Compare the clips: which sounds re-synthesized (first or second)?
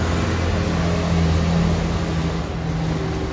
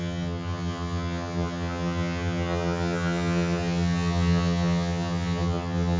second